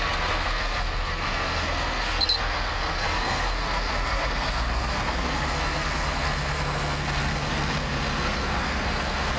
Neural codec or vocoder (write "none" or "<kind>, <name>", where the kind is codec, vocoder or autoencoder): codec, SNAC